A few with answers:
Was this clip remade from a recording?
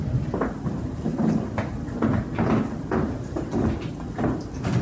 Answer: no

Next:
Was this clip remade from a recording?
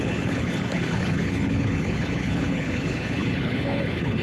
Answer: yes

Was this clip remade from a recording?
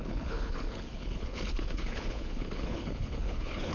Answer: yes